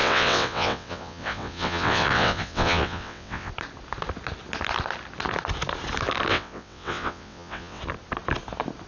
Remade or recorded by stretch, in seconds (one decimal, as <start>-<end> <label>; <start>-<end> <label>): 0.0-3.5 remade; 3.5-6.3 recorded; 6.3-7.8 remade; 7.8-8.9 recorded